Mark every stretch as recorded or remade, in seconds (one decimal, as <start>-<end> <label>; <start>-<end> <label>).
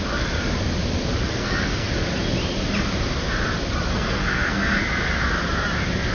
0.0-1.3 recorded; 1.3-1.9 remade; 1.9-3.9 recorded; 3.9-4.8 remade; 4.8-6.1 recorded